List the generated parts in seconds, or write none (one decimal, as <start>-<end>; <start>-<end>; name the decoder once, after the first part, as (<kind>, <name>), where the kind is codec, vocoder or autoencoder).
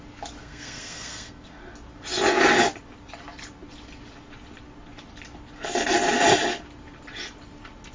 0.4-1.6 (codec, SNAC)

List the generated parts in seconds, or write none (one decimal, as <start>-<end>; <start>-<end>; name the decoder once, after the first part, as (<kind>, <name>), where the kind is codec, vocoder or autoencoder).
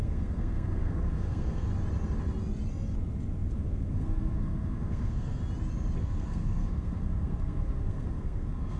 0.0-1.7 (codec, SNAC); 3.5-5.4; 6.0-8.8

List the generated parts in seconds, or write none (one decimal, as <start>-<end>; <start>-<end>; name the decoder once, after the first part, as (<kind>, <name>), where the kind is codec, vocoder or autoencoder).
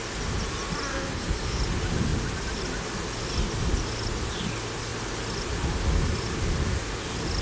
0.9-1.6 (codec, SNAC)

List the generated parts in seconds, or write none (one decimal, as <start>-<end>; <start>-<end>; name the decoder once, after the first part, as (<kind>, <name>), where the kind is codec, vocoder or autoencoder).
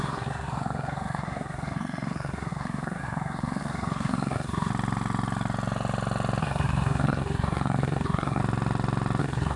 0.0-4.7 (codec, SNAC); 6.4-8.4; 9.2-9.6